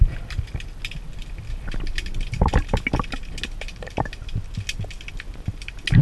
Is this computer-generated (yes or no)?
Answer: no